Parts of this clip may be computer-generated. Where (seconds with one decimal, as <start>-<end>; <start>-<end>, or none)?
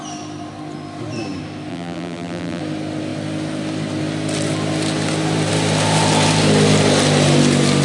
1.7-2.6